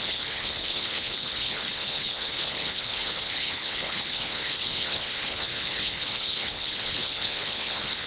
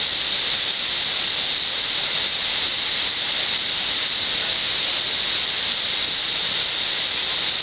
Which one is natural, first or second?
second